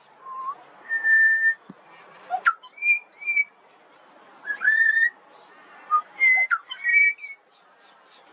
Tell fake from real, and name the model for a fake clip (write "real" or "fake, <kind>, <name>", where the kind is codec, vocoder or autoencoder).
real